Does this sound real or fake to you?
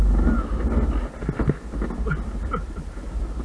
real